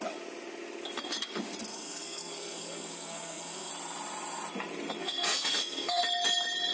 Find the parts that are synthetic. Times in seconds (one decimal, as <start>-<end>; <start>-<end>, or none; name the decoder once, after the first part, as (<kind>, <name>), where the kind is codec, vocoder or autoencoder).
1.7-3.7 (codec, SNAC); 5.0-6.0